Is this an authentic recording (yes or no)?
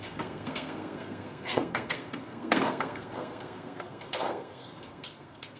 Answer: no